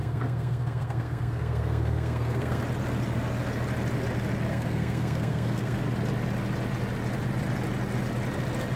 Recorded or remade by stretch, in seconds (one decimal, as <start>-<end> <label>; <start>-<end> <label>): 0.0-2.6 remade; 2.6-4.5 recorded; 4.5-5.8 remade; 5.8-8.8 recorded